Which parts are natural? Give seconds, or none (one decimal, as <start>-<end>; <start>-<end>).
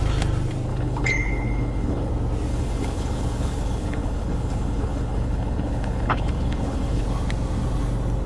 0.0-0.7; 2.1-2.5; 7.0-8.3